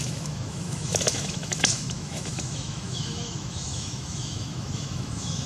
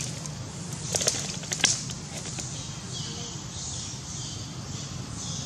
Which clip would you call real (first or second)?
second